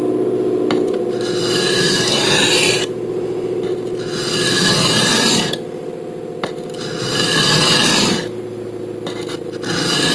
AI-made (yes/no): no